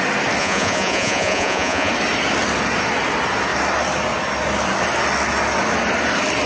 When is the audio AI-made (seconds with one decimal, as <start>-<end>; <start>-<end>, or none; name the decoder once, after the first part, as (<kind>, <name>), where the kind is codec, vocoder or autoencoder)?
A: 0.4-1.9 (vocoder, Vocos)